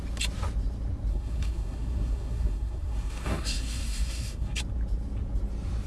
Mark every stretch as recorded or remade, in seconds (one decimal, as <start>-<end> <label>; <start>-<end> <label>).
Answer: 0.0-1.1 recorded; 1.1-4.6 remade; 4.6-5.9 recorded